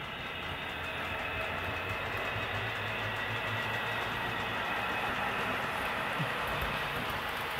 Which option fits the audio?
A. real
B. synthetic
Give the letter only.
A